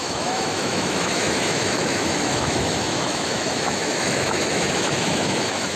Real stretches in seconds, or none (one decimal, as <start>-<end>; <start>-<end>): none